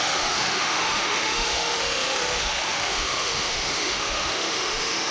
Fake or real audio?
fake